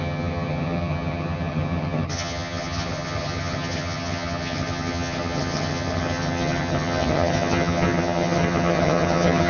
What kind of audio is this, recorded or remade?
remade